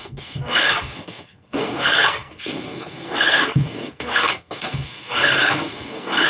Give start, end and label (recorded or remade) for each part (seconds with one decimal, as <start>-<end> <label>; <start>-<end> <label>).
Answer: 0.0-6.3 remade